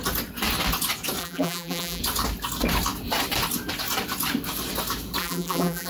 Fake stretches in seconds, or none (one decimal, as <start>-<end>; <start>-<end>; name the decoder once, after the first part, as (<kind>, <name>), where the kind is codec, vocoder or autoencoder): 1.2-2.0 (vocoder, BigVGAN v2); 5.2-5.9